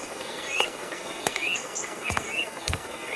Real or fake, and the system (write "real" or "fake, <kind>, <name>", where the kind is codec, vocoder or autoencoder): fake, codec, SNAC